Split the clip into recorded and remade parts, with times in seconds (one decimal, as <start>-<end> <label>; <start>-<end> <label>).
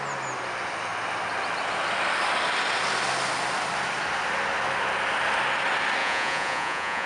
0.0-6.0 recorded; 6.0-7.1 remade